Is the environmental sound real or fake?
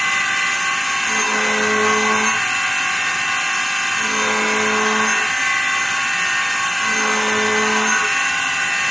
real